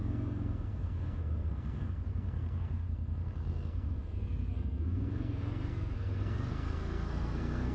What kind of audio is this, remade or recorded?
remade